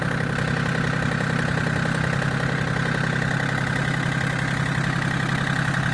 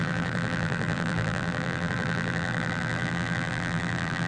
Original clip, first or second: first